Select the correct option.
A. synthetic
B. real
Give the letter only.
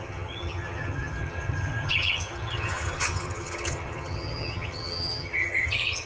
A